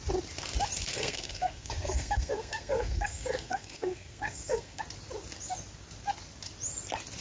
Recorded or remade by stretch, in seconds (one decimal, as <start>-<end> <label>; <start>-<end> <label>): 0.0-0.9 recorded; 0.9-4.8 remade; 4.8-7.2 recorded